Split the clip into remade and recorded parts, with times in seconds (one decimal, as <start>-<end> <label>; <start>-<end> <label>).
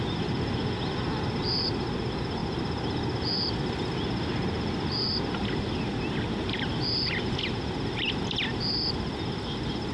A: 0.0-9.9 recorded